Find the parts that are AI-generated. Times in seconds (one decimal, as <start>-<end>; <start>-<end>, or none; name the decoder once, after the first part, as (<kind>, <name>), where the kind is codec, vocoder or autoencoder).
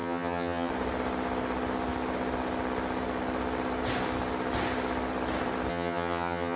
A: 0.0-0.7 (vocoder, HiFi-GAN); 5.7-6.6